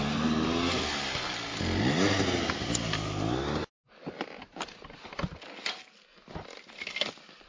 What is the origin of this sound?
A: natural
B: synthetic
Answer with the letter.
A